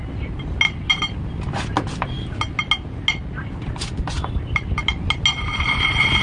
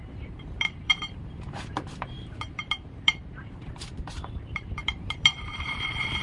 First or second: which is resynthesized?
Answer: second